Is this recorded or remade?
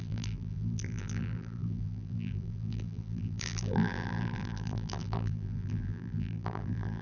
remade